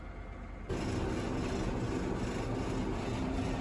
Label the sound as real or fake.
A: real